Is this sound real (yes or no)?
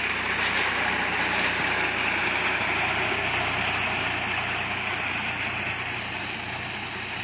yes